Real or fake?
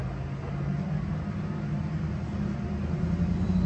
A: real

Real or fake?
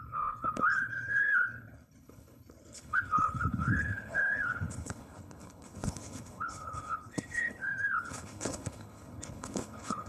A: fake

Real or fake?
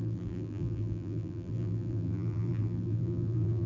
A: fake